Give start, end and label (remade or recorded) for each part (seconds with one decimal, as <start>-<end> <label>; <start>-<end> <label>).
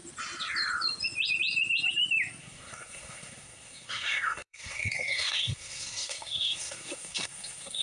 0.0-2.4 recorded; 2.4-7.8 remade